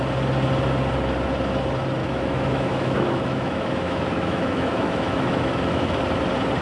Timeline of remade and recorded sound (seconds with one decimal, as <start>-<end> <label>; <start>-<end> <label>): 0.0-2.0 recorded; 2.0-6.0 remade; 6.0-6.6 recorded